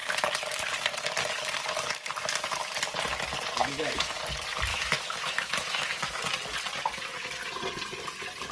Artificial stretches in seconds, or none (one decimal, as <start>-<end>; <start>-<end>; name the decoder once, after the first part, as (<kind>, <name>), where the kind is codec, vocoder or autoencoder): 3.6-4.2 (autoencoder, DAC-VAE); 4.7-6.2